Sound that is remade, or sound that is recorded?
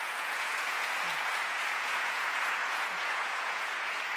remade